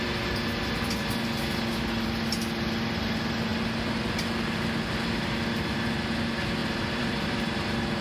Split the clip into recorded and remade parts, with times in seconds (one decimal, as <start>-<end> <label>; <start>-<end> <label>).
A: 0.0-6.6 recorded; 6.6-7.6 remade; 7.6-8.0 recorded